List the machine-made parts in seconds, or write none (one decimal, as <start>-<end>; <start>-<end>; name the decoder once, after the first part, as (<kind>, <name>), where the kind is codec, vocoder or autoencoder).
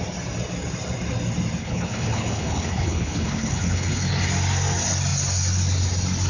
1.6-4.1 (codec, HILCodec)